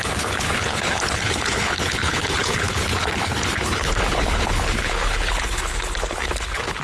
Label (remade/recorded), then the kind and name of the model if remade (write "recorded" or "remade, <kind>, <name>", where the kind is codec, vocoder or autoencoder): remade, codec, HILCodec